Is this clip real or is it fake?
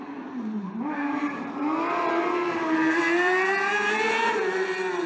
fake